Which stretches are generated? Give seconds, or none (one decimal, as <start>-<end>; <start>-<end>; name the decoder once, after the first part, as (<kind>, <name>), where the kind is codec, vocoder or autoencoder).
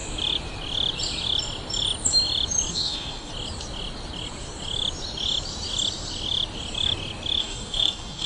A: 2.7-3.3 (codec, DAC); 7.4-8.3